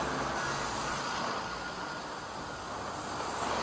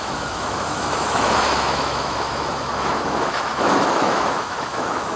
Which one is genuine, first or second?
first